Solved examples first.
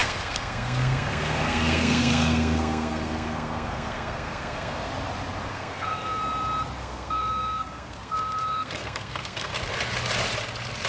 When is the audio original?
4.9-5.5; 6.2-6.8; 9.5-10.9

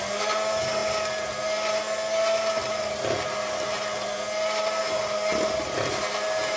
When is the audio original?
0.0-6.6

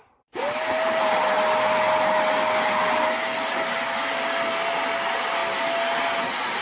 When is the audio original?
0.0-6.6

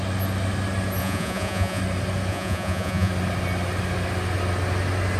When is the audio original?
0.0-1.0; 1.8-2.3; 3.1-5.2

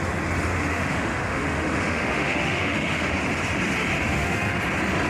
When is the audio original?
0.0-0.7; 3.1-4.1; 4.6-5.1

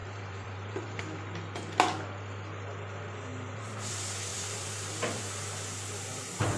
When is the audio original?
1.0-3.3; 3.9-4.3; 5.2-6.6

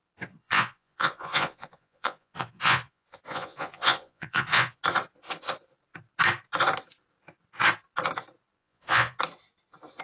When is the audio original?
0.0-0.4; 4.8-8.6; 9.2-10.0